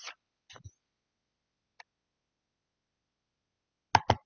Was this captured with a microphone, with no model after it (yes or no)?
yes